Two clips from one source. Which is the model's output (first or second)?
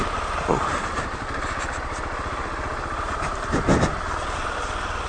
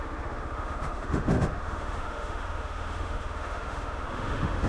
second